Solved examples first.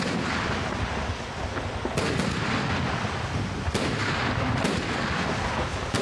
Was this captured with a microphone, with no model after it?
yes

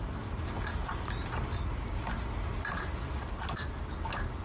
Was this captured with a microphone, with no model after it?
yes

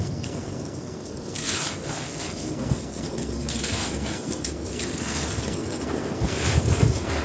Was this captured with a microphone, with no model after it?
no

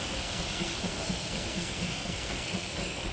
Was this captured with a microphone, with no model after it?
no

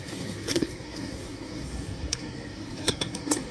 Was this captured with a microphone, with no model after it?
no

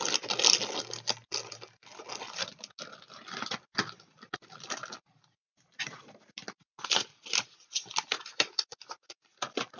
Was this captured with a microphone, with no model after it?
yes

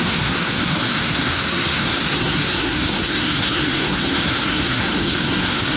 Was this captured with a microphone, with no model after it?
no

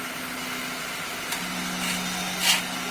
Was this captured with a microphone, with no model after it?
yes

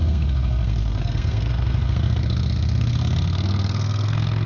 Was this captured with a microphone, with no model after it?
no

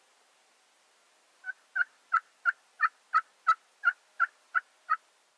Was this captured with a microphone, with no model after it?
yes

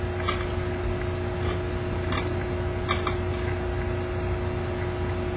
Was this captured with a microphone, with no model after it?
yes